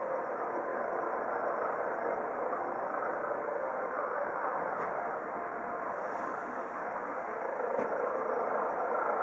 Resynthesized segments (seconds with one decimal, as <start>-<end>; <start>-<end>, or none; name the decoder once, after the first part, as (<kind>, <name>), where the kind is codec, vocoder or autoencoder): 3.4-7.4 (autoencoder, DAC-VAE)